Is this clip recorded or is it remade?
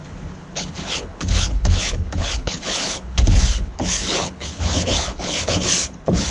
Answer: remade